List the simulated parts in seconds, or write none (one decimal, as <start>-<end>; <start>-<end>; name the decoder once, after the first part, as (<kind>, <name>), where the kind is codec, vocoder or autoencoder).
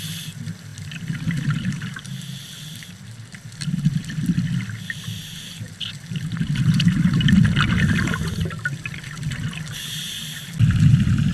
none